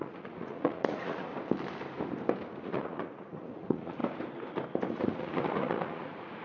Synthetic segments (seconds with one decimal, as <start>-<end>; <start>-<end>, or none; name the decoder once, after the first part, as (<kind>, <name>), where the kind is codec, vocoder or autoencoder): 0.0-1.3 (vocoder, Vocos); 2.6-4.0; 4.9-6.4